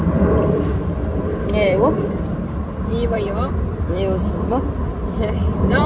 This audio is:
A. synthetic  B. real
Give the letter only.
A